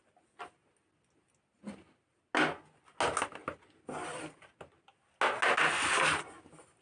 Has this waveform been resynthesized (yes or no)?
no